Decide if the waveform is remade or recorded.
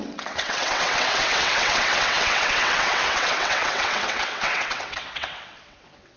remade